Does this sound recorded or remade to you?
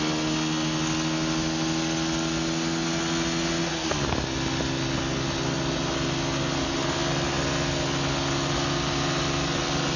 recorded